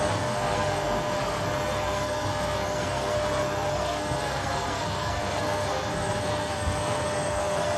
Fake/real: fake